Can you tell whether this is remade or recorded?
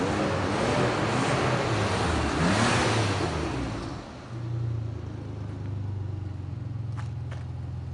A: recorded